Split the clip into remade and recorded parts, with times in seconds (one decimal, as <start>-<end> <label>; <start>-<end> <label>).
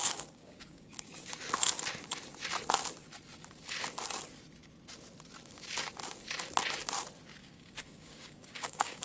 0.0-1.3 remade; 1.3-7.4 recorded; 7.4-9.0 remade